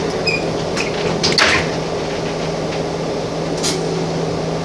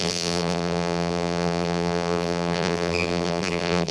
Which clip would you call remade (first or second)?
second